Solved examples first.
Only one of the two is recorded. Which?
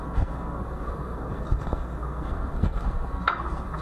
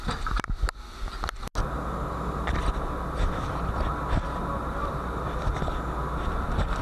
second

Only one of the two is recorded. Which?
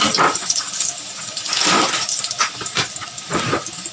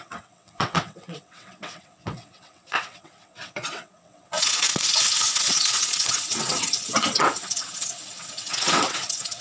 first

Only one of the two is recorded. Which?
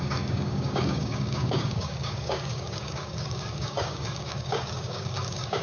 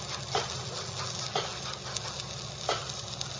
second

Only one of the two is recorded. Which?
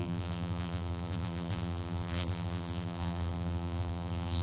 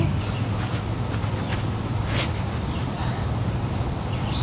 second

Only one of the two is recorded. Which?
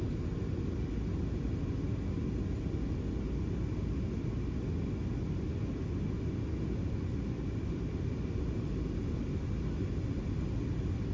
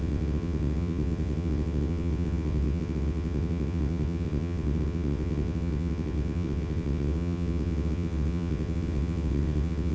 first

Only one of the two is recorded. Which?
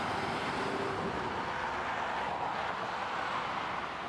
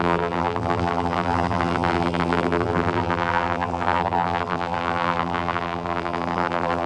first